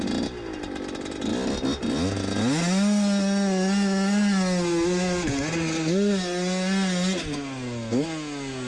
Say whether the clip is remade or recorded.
recorded